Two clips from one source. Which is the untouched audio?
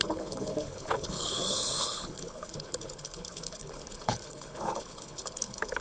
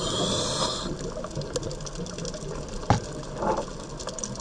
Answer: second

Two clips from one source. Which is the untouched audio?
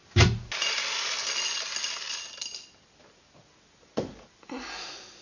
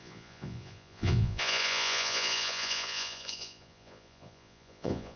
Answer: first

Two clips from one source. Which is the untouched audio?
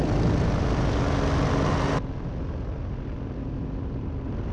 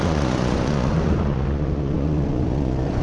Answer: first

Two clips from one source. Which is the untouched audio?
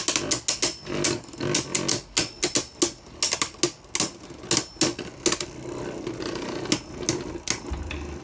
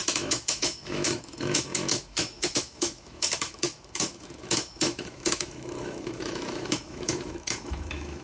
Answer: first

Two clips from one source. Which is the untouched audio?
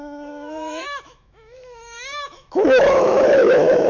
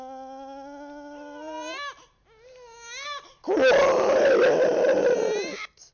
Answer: second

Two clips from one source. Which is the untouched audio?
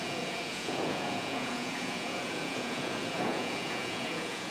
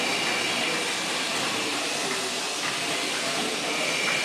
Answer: second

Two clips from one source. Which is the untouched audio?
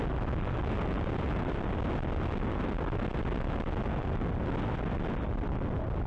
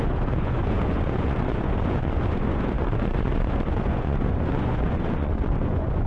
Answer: first